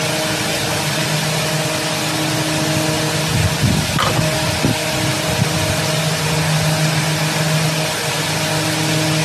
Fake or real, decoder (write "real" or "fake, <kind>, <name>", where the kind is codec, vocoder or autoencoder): real